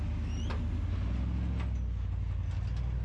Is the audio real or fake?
real